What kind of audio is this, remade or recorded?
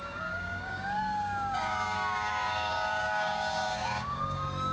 remade